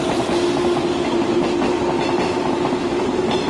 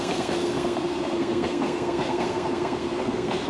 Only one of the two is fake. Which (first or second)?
second